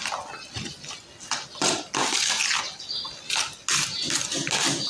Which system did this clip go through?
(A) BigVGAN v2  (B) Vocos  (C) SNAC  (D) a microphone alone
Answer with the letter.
D